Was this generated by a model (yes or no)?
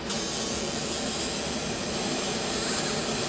no